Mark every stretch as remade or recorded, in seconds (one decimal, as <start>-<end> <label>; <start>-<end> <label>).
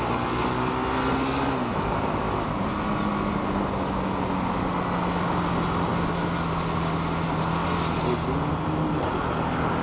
0.0-9.8 recorded